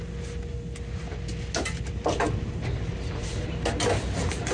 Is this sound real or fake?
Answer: real